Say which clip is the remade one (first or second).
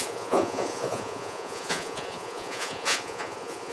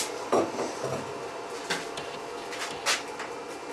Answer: first